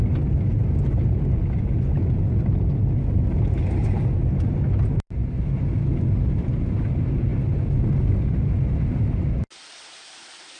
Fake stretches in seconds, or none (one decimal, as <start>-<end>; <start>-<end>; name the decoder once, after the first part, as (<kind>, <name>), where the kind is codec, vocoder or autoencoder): none